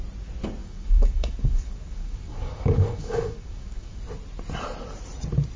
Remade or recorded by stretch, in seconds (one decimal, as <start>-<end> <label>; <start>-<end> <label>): 0.0-0.6 recorded; 0.6-4.0 remade; 4.0-5.6 recorded